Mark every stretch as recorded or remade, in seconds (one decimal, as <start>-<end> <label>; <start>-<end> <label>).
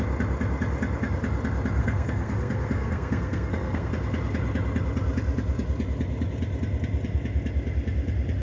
0.0-1.8 recorded; 1.8-3.9 remade; 3.9-8.4 recorded